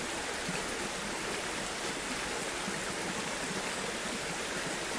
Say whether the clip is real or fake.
real